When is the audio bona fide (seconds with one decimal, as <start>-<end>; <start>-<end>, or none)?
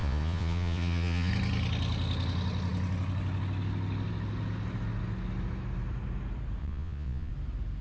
1.3-6.6; 7.3-7.8